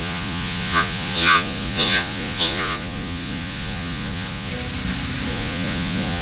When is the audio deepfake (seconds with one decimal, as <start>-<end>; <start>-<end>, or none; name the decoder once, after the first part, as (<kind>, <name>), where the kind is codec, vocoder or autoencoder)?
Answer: 0.0-4.5 (vocoder, Vocos); 5.3-6.2